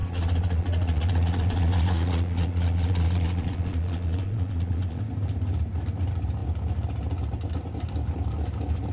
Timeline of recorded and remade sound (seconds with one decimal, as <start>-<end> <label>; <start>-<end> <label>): 0.0-5.0 remade; 5.0-8.9 recorded